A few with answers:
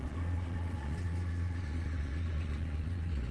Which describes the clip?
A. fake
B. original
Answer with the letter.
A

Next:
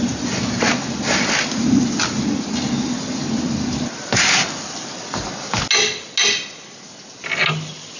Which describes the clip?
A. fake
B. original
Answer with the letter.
B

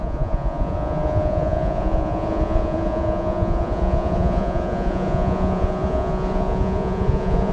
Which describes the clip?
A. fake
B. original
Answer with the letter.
A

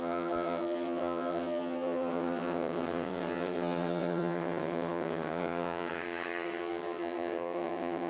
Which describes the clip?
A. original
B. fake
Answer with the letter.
B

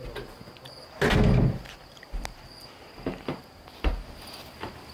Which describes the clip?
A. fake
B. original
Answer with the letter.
B